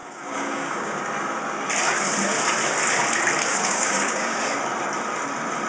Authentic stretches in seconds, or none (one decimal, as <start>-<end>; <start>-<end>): 1.0-3.5; 4.4-5.7